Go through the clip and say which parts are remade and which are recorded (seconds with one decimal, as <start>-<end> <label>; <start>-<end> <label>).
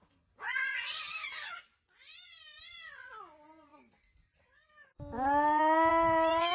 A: 0.0-6.5 recorded